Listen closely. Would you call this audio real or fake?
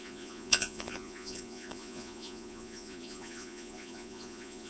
fake